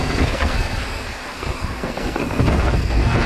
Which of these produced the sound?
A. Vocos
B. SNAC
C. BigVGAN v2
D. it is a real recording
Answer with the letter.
B